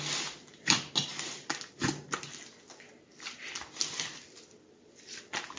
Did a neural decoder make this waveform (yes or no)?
no